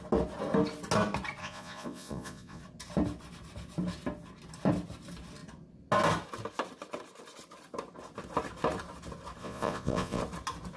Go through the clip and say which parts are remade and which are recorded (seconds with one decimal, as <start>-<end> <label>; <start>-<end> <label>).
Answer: 0.0-1.4 recorded; 1.4-2.6 remade; 2.6-9.4 recorded; 9.4-10.2 remade; 10.2-10.8 recorded